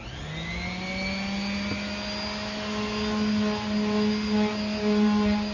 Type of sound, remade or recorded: recorded